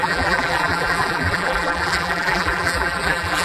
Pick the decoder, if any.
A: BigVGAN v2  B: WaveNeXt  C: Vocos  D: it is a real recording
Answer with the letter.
A